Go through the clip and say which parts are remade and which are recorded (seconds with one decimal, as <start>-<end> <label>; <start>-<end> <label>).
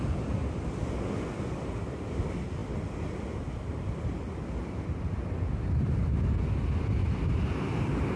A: 0.0-8.2 recorded